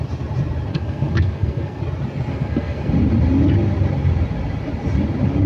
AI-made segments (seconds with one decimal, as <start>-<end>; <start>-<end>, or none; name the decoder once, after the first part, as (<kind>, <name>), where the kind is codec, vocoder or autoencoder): 0.7-1.8 (codec, SNAC); 2.3-2.9